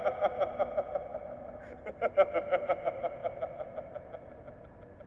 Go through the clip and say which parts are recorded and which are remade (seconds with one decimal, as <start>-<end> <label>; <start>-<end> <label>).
0.0-5.1 recorded